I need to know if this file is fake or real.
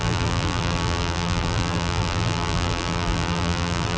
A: fake